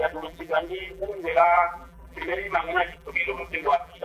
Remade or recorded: remade